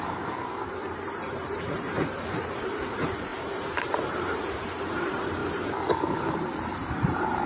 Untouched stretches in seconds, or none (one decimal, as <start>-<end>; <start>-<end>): 5.4-6.3